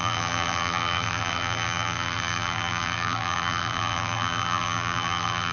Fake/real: fake